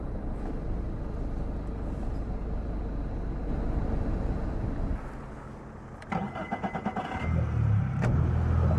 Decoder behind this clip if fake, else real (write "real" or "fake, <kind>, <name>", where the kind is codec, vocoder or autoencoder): real